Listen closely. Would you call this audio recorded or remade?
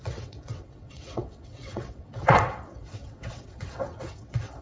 remade